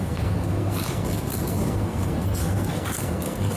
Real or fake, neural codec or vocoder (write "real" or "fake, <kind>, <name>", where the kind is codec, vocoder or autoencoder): fake, codec, SNAC